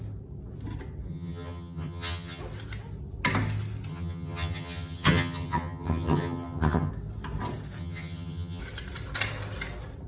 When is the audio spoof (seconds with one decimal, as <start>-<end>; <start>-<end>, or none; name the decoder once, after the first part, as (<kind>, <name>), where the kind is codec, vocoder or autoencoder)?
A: 1.1-2.4 (vocoder, HiFi-GAN); 3.9-6.9; 7.8-8.6

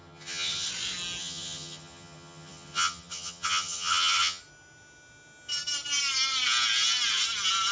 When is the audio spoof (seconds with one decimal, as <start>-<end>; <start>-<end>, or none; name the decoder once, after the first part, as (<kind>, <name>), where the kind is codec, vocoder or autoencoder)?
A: 0.0-0.7 (vocoder, HiFi-GAN); 1.2-4.4

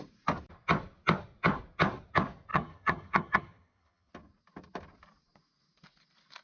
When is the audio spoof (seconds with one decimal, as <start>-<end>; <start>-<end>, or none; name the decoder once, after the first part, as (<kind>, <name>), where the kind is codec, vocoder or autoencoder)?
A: 2.5-4.1 (vocoder, HiFi-GAN)

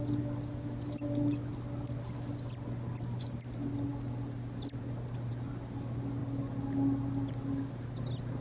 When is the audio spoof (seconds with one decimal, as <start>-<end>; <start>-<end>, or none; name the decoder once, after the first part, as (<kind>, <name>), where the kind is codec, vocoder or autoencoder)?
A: none

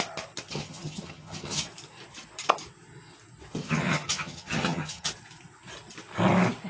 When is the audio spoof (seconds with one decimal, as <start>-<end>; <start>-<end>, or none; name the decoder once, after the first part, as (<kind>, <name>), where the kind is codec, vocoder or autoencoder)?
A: 0.5-1.6 (vocoder, HiFi-GAN); 3.6-5.1

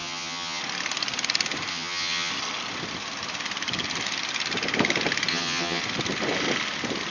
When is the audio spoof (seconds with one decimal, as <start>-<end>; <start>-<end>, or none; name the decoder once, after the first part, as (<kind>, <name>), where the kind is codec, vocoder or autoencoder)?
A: 0.0-0.6 (vocoder, HiFi-GAN); 1.7-2.3; 5.3-5.8

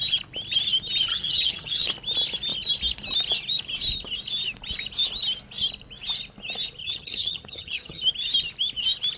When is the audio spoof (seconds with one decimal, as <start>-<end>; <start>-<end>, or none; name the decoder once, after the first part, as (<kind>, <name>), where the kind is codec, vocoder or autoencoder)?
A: 1.1-1.9 (vocoder, HiFi-GAN); 6.8-8.0